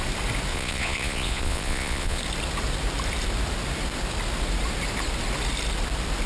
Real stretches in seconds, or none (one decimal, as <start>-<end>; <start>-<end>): 0.0-0.5; 2.2-6.3